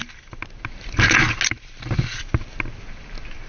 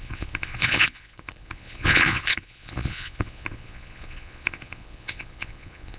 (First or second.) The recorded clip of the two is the first